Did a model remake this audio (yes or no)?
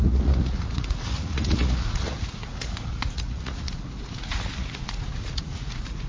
yes